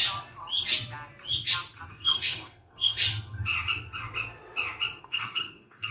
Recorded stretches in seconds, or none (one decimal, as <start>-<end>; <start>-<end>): 0.0-1.9; 3.0-5.0